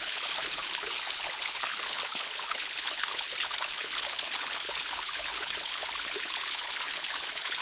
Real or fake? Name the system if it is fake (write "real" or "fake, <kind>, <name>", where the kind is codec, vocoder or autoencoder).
fake, codec, HILCodec